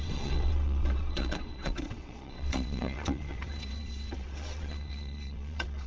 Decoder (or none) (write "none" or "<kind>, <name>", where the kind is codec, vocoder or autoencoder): vocoder, WaveNeXt